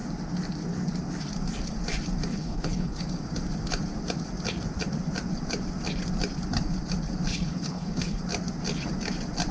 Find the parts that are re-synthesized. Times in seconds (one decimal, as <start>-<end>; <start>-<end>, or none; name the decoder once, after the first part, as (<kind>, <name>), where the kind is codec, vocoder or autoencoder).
2.3-3.0 (codec, HILCodec); 7.3-8.2